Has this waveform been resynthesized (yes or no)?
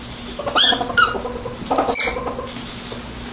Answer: no